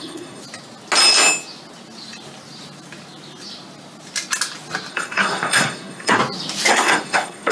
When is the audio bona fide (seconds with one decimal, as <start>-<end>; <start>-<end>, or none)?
0.4-4.9; 6.2-6.7